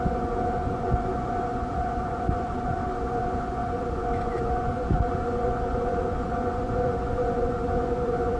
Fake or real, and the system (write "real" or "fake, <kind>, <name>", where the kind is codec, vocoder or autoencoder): fake, vocoder, Vocos